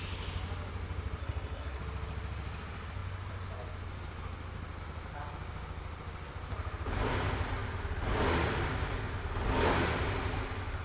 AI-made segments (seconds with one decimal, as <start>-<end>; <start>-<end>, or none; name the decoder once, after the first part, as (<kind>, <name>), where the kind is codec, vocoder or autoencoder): 1.2-1.8 (codec, SNAC)

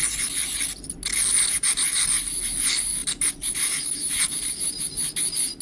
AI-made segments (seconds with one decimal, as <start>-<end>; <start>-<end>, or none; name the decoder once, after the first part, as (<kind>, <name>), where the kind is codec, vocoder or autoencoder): none